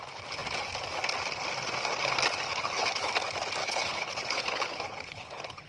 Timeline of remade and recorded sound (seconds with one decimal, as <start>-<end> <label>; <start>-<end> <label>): 0.0-2.5 recorded; 2.5-3.1 remade; 3.1-3.6 recorded; 3.6-5.7 remade